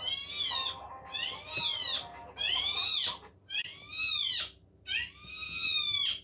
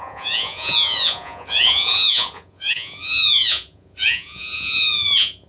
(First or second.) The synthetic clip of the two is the second